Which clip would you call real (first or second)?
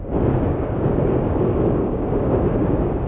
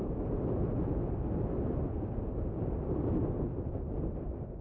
second